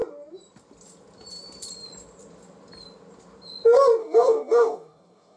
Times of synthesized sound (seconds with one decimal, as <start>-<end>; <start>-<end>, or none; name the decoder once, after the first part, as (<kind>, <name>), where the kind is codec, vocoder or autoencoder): 4.0-5.4 (codec, DAC)